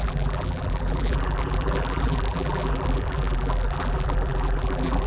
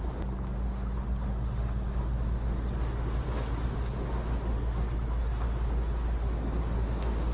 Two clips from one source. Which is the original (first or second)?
second